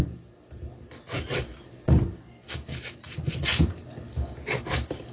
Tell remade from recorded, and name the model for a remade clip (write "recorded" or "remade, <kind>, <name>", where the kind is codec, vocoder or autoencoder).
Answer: recorded